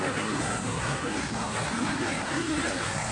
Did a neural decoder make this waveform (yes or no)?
yes